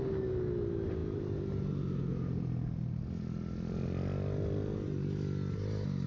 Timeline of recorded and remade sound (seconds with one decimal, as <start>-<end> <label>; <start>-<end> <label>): 0.0-6.1 recorded